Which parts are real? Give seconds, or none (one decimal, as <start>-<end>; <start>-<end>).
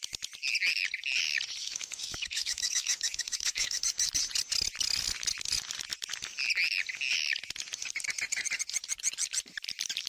0.0-1.6; 3.8-10.1